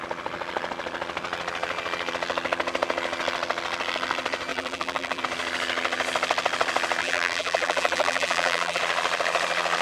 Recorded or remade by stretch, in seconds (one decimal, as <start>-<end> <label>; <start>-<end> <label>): 0.0-4.5 recorded; 4.5-5.2 remade; 5.2-7.0 recorded; 7.0-8.8 remade; 8.8-9.8 recorded